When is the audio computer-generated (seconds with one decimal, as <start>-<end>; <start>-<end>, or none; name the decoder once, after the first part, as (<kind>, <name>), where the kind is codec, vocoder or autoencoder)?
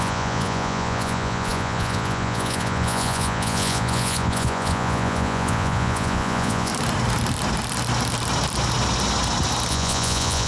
0.0-6.7 (vocoder, Vocos); 9.7-10.5